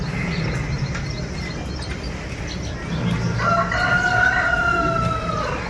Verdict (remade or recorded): recorded